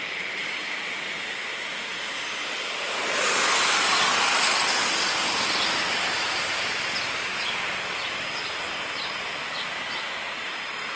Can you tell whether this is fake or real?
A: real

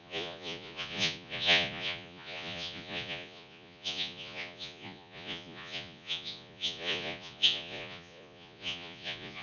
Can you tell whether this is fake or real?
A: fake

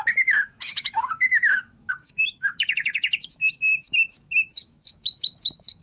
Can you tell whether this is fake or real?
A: fake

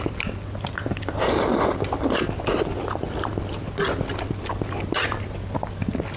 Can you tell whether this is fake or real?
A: real